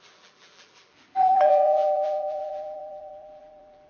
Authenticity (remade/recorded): remade